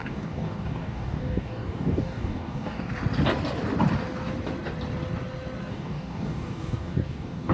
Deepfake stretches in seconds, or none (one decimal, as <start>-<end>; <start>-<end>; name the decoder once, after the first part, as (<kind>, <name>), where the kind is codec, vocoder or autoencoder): 0.0-2.9 (codec, DAC); 5.7-7.5